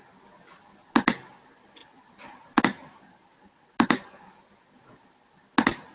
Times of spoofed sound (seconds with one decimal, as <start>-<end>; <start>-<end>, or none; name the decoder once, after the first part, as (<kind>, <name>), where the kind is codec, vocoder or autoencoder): none